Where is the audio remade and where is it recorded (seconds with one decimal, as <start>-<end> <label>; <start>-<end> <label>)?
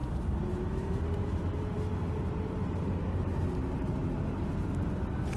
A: 0.0-5.4 recorded